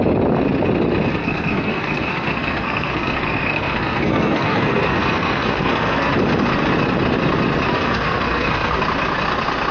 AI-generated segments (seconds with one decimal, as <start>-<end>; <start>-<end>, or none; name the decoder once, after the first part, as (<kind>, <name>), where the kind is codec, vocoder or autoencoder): 1.2-6.1 (codec, SNAC); 7.7-8.8